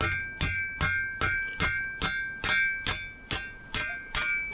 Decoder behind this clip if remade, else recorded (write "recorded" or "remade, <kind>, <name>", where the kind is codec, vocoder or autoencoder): recorded